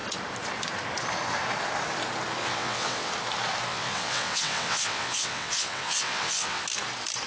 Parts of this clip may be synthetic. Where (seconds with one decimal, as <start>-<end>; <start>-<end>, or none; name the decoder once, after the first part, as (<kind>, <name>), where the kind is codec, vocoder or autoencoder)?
2.4-3.1 (vocoder, WaveNeXt); 3.7-6.6